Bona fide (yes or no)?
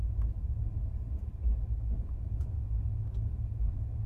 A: yes